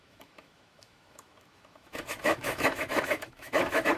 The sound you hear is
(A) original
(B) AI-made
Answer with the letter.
B